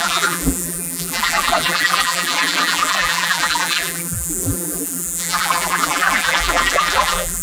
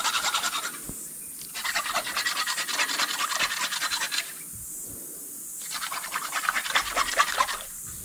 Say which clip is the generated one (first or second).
first